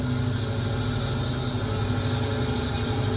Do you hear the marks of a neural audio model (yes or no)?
no